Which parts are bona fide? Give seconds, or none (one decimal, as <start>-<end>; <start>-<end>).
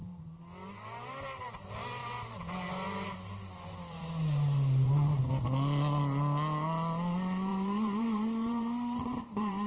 0.0-2.0; 5.2-7.5